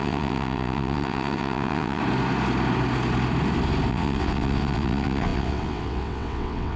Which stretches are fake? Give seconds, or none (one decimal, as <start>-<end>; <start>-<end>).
0.0-2.0; 3.9-6.8